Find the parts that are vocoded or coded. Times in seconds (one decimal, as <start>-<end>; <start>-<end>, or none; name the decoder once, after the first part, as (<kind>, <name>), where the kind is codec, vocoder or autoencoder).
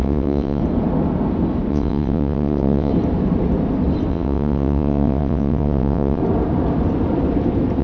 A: 0.0-0.6 (vocoder, WaveNeXt); 1.7-2.9; 4.1-6.2